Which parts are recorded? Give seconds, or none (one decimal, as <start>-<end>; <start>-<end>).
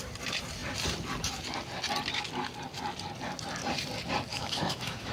0.0-4.3